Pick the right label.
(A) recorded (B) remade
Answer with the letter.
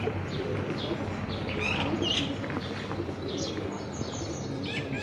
A